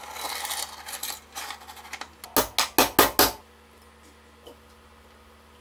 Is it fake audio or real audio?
real